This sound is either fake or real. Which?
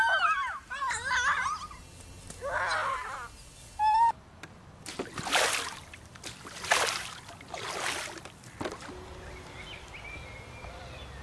real